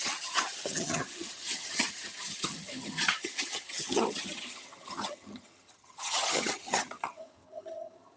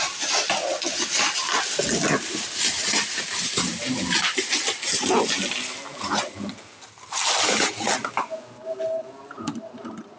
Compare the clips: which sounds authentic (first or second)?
second